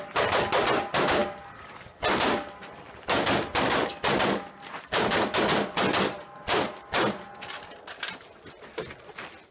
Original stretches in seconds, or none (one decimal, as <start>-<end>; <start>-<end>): 0.0-9.5